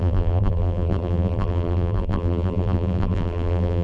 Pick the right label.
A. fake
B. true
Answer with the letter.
A